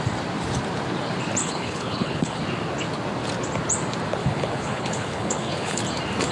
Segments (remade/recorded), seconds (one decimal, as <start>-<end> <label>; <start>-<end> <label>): 0.0-1.4 recorded; 1.4-2.4 remade; 2.4-4.2 recorded; 4.2-5.8 remade; 5.8-6.3 recorded